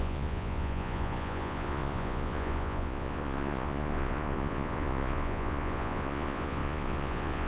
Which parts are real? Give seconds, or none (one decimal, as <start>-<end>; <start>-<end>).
none